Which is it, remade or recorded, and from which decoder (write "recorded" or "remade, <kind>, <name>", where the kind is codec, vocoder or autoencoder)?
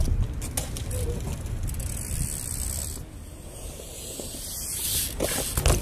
recorded